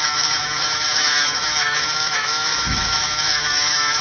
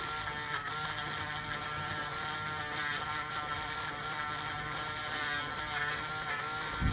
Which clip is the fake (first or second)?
first